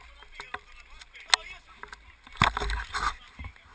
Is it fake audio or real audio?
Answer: real